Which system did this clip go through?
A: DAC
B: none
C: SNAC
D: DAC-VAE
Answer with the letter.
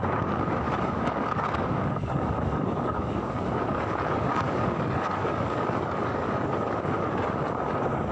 A